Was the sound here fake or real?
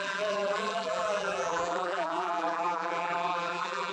fake